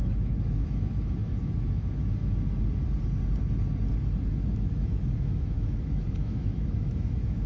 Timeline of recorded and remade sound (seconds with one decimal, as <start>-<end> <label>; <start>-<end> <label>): 0.0-2.2 remade; 2.2-4.4 recorded; 4.4-7.5 remade